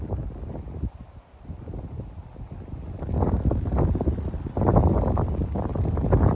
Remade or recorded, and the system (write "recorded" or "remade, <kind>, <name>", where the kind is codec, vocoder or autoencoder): recorded